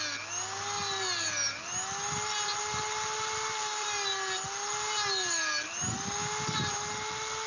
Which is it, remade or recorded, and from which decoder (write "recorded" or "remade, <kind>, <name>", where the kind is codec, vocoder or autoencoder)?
recorded